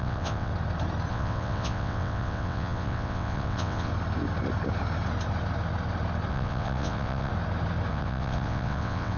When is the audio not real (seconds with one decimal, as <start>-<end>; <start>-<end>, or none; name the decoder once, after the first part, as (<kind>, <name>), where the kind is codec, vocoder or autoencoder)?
0.0-0.5 (vocoder, WaveNeXt); 1.1-3.9; 6.3-7.3; 7.9-9.2

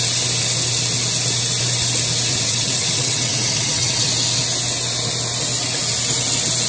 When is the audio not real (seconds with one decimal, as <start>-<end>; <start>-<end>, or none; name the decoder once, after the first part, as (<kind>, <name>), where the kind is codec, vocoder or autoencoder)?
2.3-4.1 (vocoder, WaveNeXt)

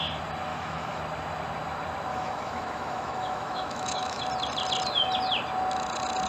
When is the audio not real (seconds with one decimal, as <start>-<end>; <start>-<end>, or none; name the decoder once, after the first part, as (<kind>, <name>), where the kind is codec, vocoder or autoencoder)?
0.5-1.0 (autoencoder, DAC-VAE); 2.1-4.2